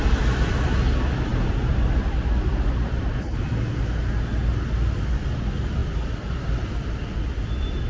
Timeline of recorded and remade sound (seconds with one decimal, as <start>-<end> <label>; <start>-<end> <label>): 0.0-1.3 recorded; 1.3-3.5 remade; 3.5-5.8 recorded; 5.8-7.9 remade